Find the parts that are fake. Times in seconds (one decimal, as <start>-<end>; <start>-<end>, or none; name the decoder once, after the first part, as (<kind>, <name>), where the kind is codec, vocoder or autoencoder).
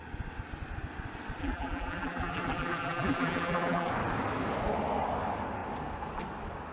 1.4-3.9 (vocoder, BigVGAN v2)